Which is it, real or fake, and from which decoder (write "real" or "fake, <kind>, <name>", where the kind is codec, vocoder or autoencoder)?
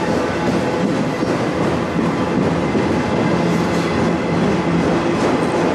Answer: real